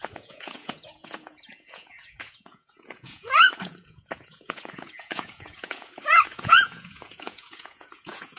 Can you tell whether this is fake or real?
fake